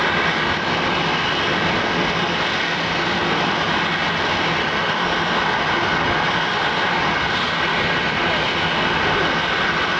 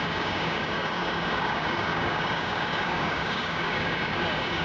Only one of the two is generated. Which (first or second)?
second